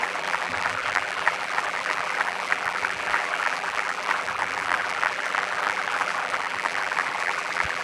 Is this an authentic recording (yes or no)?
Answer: no